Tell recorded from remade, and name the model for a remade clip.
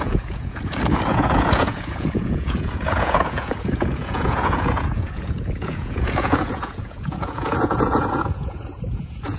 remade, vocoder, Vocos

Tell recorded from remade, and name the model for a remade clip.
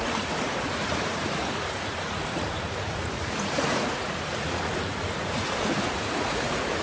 remade, vocoder, Vocos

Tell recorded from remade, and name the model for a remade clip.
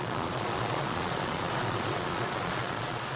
remade, vocoder, Vocos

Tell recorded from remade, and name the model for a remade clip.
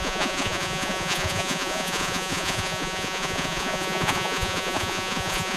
remade, vocoder, Vocos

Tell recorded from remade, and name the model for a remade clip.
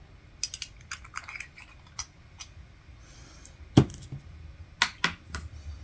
recorded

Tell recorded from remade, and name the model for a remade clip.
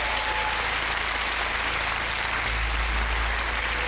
recorded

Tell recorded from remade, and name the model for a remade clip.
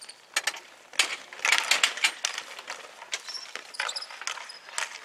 recorded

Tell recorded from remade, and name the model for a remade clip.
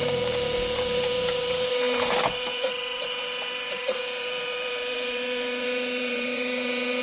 remade, vocoder, Vocos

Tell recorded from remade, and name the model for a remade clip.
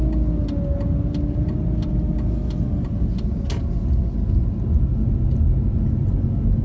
recorded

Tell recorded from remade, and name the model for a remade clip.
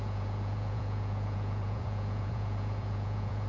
remade, vocoder, Vocos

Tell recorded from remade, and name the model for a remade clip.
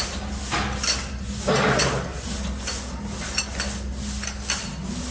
recorded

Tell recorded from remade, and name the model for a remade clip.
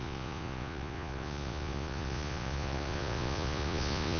remade, vocoder, Vocos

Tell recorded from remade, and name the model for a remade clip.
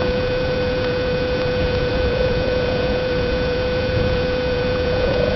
remade, vocoder, Vocos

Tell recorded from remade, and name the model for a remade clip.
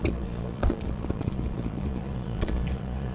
remade, vocoder, Vocos